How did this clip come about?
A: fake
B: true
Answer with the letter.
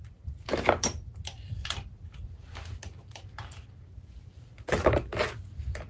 B